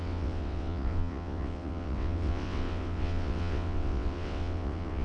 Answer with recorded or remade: remade